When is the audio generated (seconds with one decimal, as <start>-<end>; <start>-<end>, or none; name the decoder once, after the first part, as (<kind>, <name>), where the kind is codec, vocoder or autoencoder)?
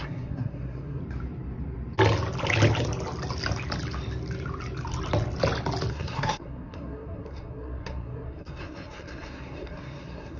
0.0-1.0 (codec, SNAC); 5.9-10.4